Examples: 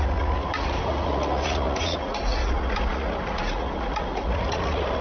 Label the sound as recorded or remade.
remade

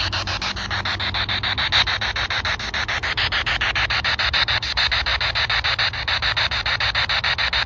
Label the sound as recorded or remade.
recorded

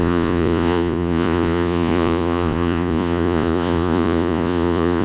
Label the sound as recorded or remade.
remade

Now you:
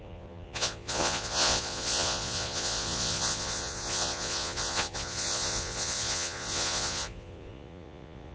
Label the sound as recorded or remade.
remade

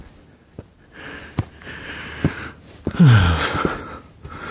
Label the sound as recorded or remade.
recorded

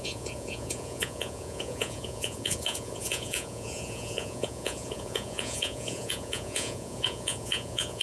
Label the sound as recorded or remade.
remade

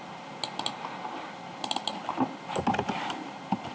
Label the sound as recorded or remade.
recorded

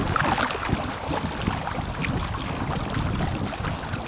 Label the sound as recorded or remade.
recorded